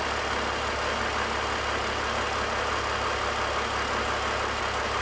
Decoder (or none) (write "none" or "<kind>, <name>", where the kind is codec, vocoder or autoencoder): none